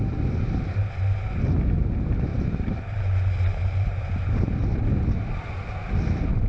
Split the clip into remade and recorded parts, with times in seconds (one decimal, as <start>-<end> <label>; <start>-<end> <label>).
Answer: 0.0-2.3 recorded; 2.3-3.0 remade; 3.0-3.5 recorded; 3.5-4.3 remade; 4.3-6.5 recorded